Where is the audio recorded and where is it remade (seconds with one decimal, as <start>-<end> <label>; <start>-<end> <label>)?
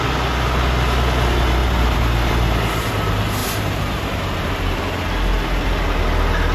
0.0-1.6 recorded; 1.6-2.9 remade; 2.9-3.4 recorded; 3.4-4.0 remade; 4.0-6.5 recorded